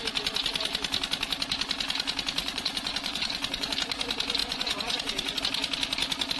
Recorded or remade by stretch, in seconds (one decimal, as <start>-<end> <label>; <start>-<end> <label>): 0.0-2.4 recorded; 2.4-3.7 remade; 3.7-4.4 recorded; 4.4-5.4 remade; 5.4-6.4 recorded